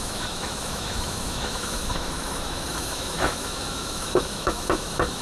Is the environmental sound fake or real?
fake